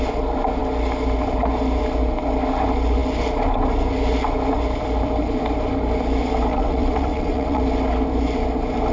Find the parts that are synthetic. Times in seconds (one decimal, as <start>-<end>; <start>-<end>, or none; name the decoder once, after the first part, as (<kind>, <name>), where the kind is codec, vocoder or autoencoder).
6.5-7.6 (vocoder, WaveNeXt)